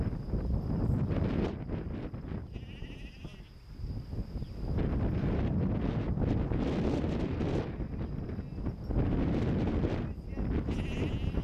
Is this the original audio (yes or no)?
yes